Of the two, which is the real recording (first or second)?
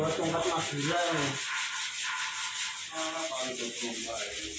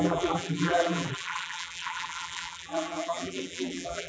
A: first